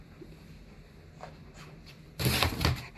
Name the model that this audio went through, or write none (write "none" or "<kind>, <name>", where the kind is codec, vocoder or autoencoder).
none